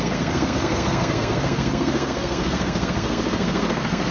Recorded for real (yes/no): no